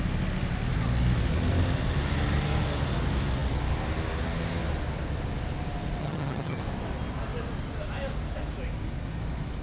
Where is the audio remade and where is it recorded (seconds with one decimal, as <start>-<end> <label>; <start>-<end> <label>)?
0.0-6.0 recorded; 6.0-6.6 remade; 6.6-9.6 recorded